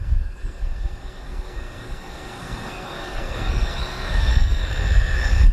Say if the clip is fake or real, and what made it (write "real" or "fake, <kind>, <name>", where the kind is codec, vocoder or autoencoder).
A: fake, codec, SNAC